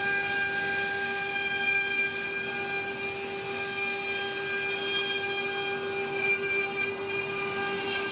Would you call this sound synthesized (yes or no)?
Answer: no